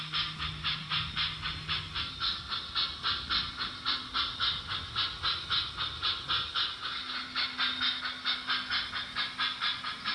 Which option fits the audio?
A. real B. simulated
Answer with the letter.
A